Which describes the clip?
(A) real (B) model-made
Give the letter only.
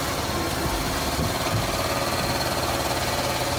A